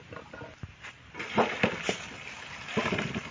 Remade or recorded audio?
recorded